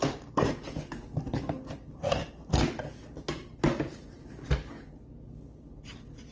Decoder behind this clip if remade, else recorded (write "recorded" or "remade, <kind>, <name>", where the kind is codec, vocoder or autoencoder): recorded